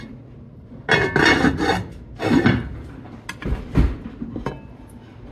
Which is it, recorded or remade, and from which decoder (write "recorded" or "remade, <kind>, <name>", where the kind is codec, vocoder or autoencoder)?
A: recorded